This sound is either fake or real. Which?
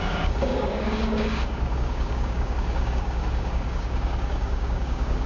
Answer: fake